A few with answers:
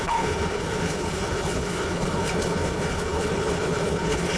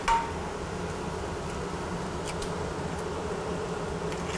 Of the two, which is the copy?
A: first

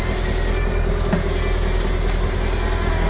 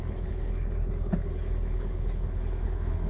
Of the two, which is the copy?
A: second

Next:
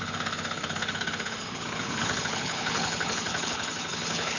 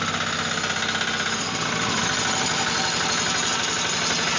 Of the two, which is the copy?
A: first